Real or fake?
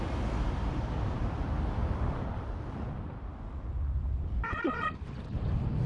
fake